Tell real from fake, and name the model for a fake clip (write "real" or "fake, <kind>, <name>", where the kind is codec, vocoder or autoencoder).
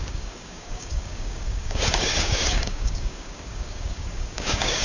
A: fake, codec, DAC